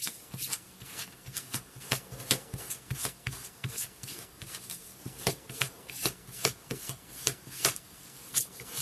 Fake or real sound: fake